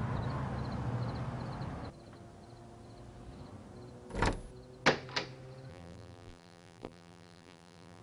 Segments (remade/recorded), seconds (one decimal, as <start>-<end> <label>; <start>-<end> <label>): 0.0-5.7 recorded; 5.7-8.0 remade